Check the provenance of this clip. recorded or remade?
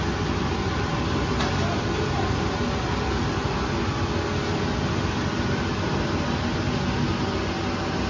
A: recorded